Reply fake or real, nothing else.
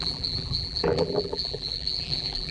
fake